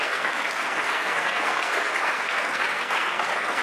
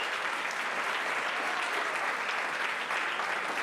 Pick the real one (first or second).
second